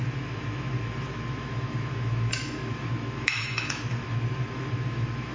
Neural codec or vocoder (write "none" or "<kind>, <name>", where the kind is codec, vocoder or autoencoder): autoencoder, DAC-VAE